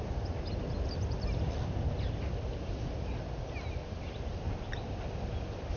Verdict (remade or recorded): recorded